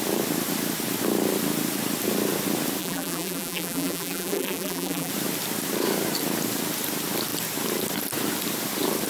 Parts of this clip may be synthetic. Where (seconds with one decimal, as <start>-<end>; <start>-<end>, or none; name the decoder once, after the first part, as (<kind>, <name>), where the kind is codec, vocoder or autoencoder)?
2.8-5.1 (vocoder, BigVGAN v2)